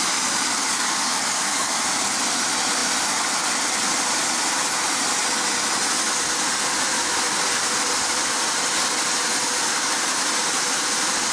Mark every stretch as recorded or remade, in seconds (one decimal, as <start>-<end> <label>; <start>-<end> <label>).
0.0-0.5 recorded; 0.5-1.7 remade; 1.7-11.3 recorded